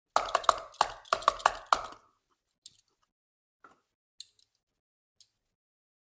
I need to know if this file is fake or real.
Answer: real